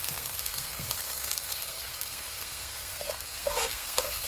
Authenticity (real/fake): fake